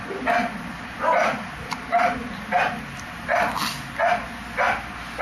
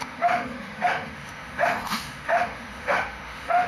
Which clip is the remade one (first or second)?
second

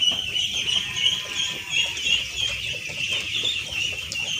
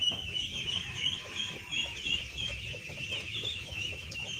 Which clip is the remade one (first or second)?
second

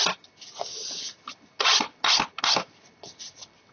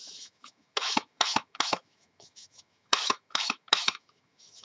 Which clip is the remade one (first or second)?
second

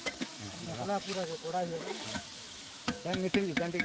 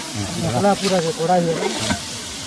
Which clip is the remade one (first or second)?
first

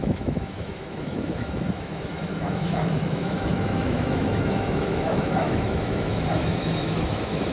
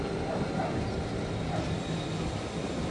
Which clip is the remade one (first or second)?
first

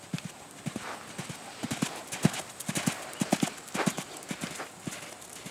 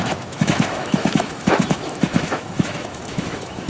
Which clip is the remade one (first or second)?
second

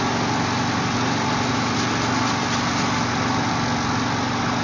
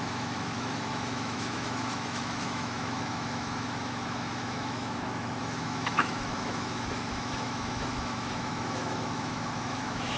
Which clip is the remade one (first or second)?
second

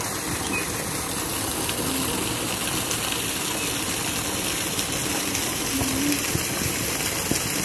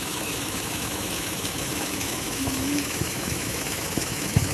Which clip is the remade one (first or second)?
second